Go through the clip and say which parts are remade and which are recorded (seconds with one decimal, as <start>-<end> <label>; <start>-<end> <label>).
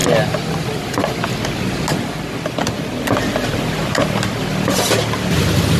0.0-5.8 recorded